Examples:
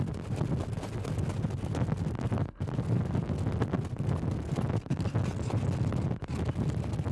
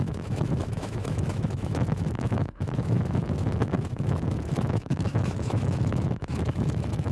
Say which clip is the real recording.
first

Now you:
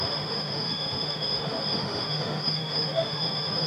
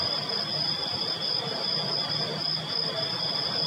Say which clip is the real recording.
second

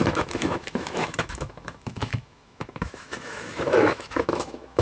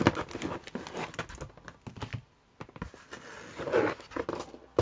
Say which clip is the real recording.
second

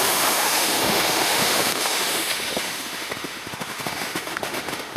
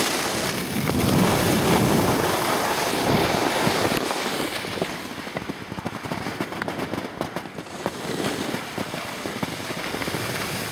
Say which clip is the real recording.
second